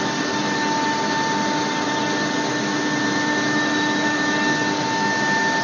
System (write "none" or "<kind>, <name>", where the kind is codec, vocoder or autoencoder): none